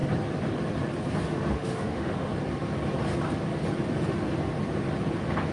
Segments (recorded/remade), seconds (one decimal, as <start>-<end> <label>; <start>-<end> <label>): 0.0-1.3 recorded; 1.3-2.3 remade; 2.3-5.5 recorded